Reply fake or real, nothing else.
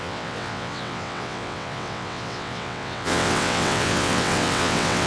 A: fake